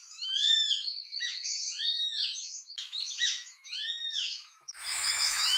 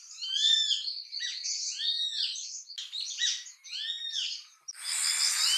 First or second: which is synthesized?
first